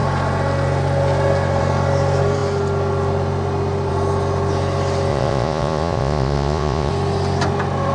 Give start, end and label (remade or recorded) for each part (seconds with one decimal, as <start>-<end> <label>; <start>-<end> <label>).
0.0-5.1 recorded; 5.1-6.9 remade; 6.9-7.9 recorded